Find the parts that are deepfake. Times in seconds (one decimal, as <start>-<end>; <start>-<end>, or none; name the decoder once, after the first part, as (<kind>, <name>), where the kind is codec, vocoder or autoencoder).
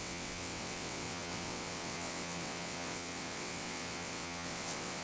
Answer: 0.0-5.0 (vocoder, WaveNeXt)